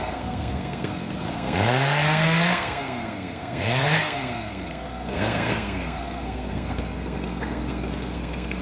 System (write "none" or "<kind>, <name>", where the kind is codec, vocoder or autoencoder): codec, SNAC